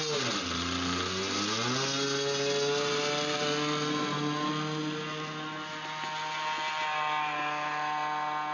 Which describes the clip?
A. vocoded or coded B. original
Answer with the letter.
B